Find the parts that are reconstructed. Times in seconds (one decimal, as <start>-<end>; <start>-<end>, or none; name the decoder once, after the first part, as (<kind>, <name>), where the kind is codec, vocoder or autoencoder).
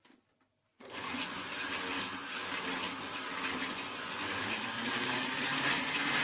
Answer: 0.7-1.5 (vocoder, Vocos); 3.7-4.4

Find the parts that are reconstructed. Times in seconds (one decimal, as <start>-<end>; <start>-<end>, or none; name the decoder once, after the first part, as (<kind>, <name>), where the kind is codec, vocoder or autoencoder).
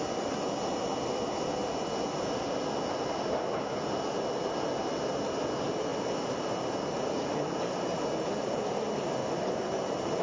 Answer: 9.2-9.7 (vocoder, Vocos)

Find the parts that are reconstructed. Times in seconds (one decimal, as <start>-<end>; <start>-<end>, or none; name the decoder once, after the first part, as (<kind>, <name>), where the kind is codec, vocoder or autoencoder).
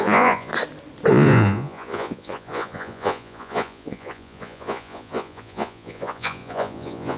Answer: 0.0-0.5 (vocoder, Vocos); 1.1-7.2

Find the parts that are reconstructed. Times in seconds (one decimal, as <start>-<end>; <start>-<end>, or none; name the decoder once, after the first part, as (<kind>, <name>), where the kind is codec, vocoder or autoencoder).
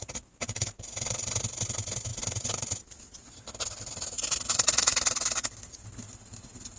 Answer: none